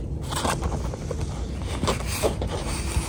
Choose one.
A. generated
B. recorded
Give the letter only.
B